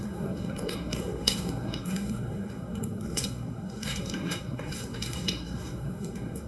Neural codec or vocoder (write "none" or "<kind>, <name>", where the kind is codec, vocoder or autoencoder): codec, SNAC